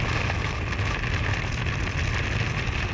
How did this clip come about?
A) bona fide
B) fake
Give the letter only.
A